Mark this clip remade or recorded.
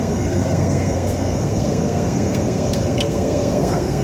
remade